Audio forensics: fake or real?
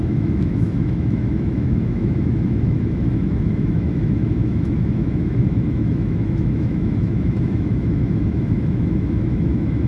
fake